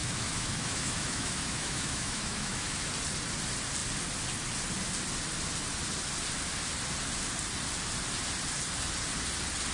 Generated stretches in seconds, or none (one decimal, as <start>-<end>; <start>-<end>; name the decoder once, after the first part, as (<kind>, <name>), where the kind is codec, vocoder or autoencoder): 0.0-2.9 (autoencoder, DAC-VAE)